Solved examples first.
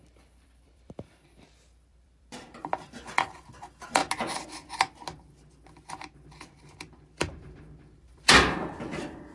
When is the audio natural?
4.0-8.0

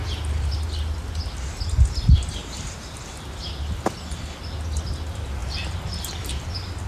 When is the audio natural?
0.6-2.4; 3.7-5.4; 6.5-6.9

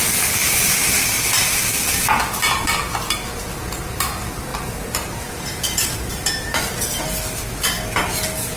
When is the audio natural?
0.0-0.4; 1.1-4.5; 7.0-8.6